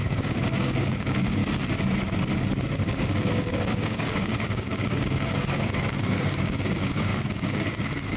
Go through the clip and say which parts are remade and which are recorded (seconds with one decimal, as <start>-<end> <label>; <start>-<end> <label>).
0.0-1.4 remade; 1.4-2.9 recorded; 2.9-8.2 remade